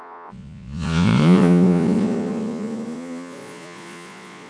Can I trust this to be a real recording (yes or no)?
no